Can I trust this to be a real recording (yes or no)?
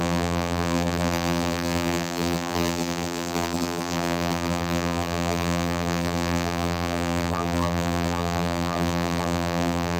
no